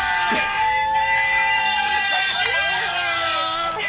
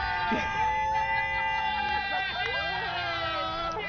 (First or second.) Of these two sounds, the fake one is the first